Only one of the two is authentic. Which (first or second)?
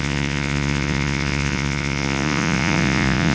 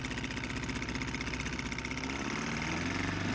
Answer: second